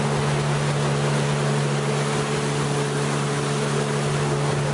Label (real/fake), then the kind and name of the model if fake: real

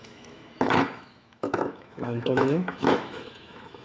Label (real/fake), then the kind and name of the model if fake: fake, autoencoder, DAC-VAE